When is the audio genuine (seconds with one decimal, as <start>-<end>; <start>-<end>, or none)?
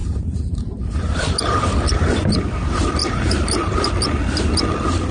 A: 1.2-3.0; 3.9-5.1